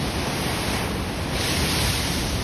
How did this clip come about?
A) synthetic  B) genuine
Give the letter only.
B